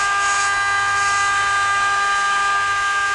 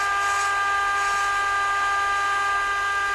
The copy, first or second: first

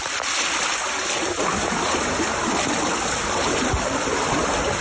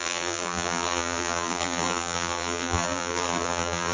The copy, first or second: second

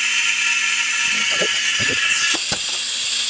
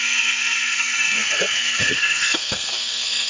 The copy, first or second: second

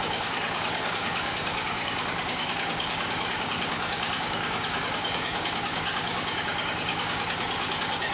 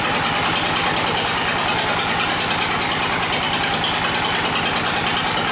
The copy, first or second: first